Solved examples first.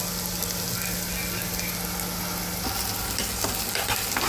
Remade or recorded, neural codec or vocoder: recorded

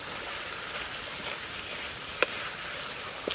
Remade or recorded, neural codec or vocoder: recorded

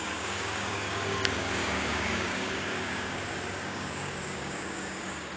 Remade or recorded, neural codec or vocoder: remade, codec, DAC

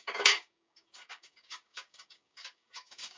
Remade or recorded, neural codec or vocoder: remade, codec, DAC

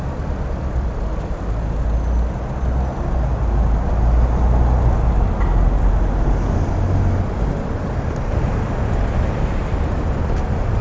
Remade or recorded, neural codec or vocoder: recorded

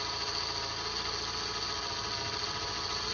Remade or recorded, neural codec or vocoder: recorded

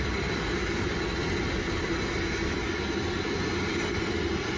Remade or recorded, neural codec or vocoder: recorded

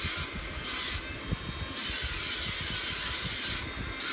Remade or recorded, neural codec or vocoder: recorded